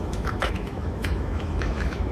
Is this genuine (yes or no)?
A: no